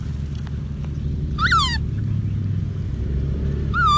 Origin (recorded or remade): recorded